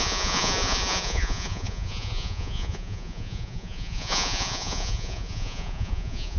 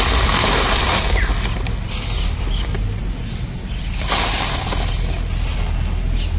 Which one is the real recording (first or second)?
second